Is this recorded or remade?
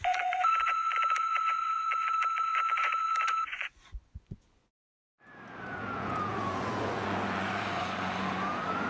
remade